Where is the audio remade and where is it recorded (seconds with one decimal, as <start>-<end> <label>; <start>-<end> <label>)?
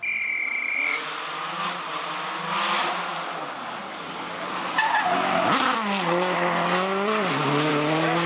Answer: 0.0-8.3 recorded